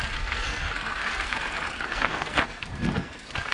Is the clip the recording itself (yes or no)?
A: no